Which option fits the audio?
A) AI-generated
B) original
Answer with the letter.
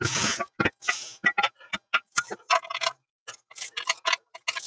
B